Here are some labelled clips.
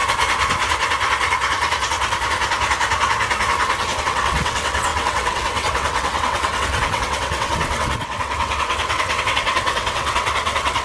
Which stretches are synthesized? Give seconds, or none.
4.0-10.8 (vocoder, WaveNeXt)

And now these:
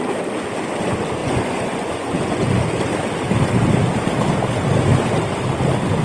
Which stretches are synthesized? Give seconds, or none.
1.2-2.5 (vocoder, Vocos)

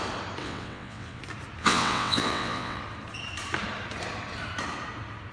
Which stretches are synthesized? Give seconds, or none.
0.4-1.2 (vocoder, WaveNeXt); 1.6-2.8

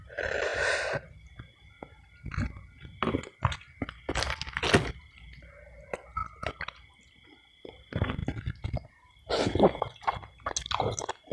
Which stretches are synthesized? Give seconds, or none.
none

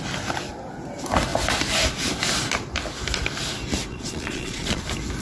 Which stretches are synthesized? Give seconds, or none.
3.9-4.8 (vocoder, Vocos)

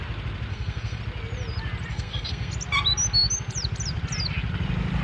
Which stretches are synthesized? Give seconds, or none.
0.5-1.0 (codec, SNAC); 1.9-2.5

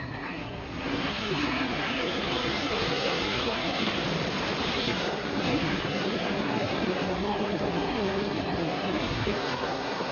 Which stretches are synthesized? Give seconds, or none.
0.0-3.9 (codec, SNAC); 4.7-10.1

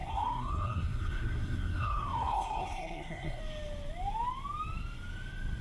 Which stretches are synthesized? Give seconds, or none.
0.0-3.4 (codec, SNAC)